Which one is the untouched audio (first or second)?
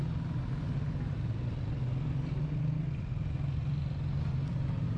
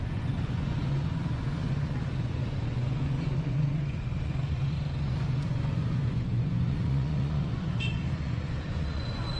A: first